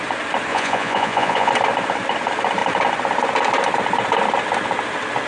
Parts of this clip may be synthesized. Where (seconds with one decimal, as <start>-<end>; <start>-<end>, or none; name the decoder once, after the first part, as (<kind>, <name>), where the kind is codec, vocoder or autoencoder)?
0.5-1.5 (vocoder, Vocos)